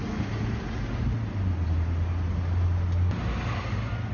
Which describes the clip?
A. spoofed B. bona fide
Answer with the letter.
B